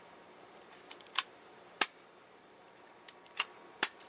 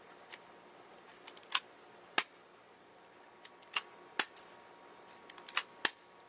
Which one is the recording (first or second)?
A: second